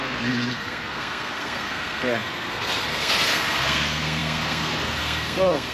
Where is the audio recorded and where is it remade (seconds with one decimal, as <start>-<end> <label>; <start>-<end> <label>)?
0.0-5.7 remade